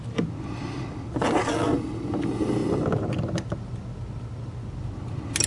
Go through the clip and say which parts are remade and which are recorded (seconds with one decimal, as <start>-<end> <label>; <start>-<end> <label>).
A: 0.0-5.5 recorded